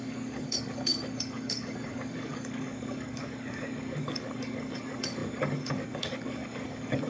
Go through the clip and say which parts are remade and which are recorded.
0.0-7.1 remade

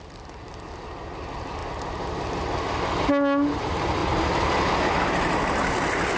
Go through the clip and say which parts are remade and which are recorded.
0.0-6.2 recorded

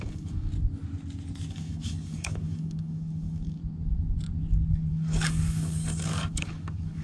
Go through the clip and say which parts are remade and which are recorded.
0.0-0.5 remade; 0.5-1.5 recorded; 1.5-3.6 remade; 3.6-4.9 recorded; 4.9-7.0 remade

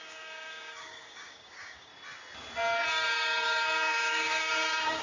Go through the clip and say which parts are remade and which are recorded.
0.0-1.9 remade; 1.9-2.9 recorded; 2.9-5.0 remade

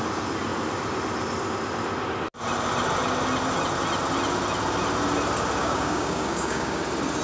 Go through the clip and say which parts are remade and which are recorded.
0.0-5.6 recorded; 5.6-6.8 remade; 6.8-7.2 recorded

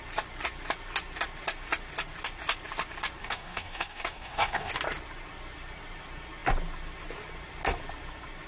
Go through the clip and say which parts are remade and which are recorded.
0.0-3.2 recorded; 3.2-4.7 remade; 4.7-8.5 recorded